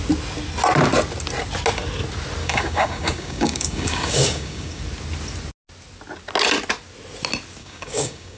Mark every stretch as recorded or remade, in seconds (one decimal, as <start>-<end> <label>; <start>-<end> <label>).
0.0-2.4 recorded; 2.4-4.8 remade; 4.8-7.6 recorded; 7.6-8.4 remade